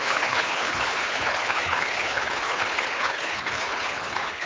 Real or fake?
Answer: fake